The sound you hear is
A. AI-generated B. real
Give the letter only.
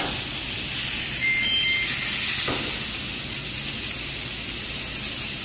B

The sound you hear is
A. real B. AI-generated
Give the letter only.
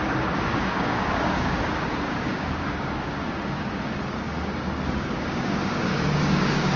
B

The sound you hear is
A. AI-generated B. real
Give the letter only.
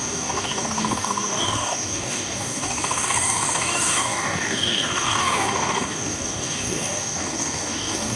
A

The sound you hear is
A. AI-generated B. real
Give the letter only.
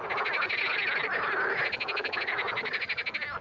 B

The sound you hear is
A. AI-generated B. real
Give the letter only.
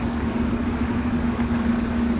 A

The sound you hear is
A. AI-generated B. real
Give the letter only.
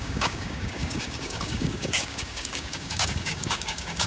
A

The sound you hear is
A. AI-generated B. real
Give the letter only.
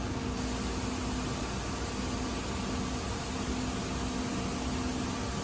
B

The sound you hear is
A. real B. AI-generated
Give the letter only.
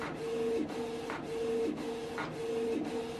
A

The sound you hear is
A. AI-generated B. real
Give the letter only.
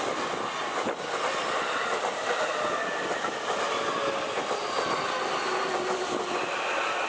B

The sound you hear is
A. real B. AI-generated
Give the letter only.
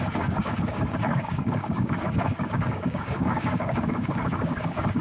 B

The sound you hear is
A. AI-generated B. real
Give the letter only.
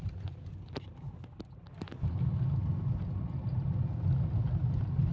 B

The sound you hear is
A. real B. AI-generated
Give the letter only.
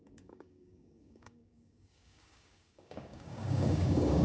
B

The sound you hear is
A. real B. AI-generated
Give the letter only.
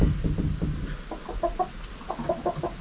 A